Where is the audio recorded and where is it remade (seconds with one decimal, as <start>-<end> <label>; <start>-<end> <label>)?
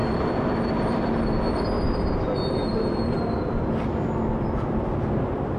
0.0-3.4 remade; 3.4-5.6 recorded